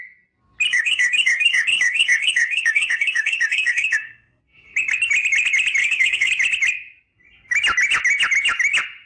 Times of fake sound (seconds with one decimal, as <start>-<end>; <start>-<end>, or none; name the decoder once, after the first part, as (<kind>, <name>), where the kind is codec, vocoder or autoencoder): 0.7-4.4 (codec, SNAC); 5.8-6.3